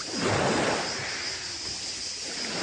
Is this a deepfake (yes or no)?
no